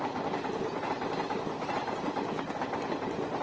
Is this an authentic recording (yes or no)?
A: yes